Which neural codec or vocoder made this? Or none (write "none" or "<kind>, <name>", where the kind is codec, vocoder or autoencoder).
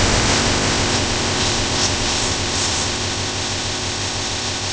codec, ZipCodec